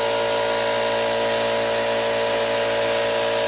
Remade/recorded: recorded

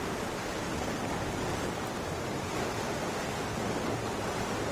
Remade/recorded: recorded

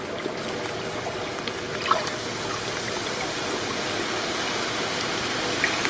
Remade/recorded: recorded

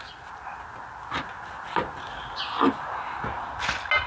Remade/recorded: recorded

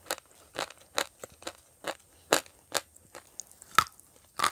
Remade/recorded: recorded